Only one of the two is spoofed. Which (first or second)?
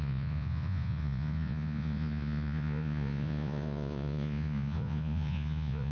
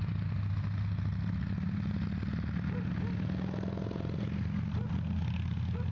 first